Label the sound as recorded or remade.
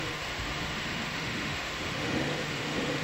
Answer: remade